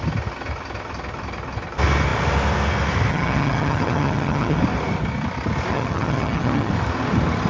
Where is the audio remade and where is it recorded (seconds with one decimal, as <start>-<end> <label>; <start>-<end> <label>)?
0.0-3.1 recorded; 3.1-4.6 remade; 4.6-5.7 recorded; 5.7-6.7 remade; 6.7-7.5 recorded